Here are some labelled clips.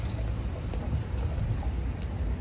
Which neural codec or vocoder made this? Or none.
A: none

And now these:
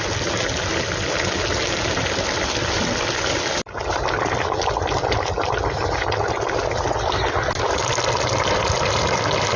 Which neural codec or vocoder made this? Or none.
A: none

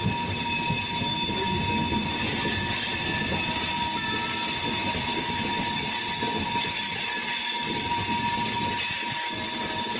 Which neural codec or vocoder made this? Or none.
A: none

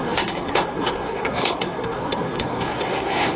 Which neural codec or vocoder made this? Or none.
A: codec, SNAC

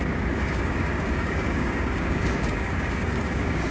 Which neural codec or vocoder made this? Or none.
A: codec, DAC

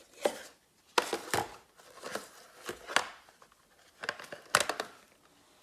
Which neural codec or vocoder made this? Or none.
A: none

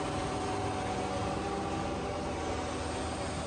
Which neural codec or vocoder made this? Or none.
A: none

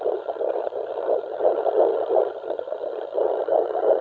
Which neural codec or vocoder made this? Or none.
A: vocoder, HiFi-GAN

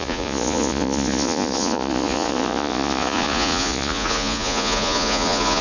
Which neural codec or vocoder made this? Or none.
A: vocoder, Vocos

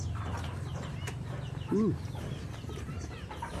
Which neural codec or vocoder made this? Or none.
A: vocoder, BigVGAN v2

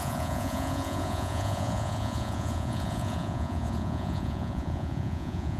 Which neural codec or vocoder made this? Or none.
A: vocoder, Vocos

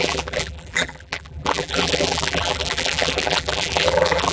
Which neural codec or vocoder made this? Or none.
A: vocoder, BigVGAN v2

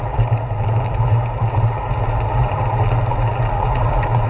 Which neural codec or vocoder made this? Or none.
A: vocoder, BigVGAN v2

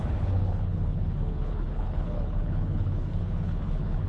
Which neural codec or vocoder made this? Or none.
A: codec, HILCodec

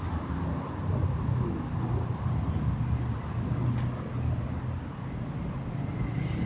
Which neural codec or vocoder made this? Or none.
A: none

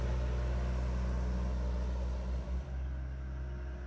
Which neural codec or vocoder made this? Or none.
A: none